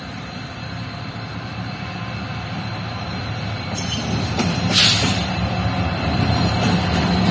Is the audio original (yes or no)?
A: no